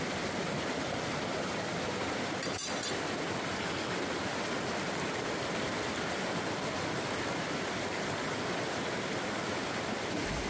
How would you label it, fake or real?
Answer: real